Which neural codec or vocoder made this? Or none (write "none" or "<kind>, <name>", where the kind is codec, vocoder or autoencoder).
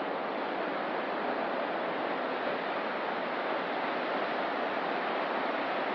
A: none